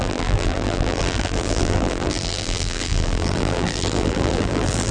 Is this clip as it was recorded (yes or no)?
no